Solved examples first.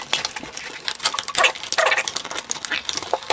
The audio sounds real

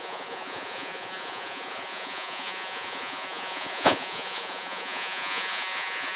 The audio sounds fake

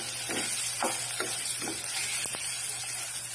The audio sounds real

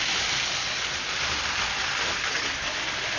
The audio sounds real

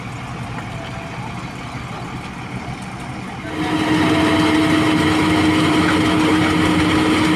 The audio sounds real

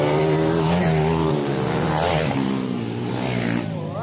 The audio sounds real